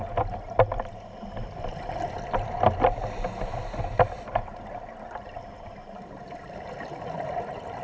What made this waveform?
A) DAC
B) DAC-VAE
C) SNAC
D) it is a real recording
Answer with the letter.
D